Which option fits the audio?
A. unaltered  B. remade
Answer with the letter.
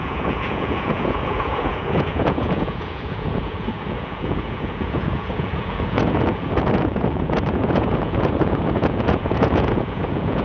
B